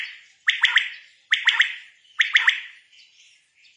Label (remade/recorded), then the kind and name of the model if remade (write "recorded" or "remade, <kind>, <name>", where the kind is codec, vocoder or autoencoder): remade, vocoder, BigVGAN v2